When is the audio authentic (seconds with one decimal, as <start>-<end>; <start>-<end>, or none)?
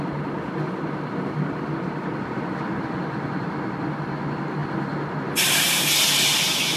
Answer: 0.0-6.8